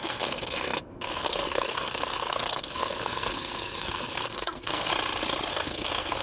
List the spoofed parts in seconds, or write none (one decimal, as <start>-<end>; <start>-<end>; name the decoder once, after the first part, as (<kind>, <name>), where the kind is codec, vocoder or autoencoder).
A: 0.0-4.9 (codec, SNAC); 5.5-6.2